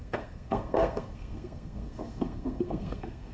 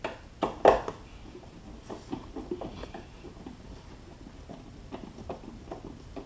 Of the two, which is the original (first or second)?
second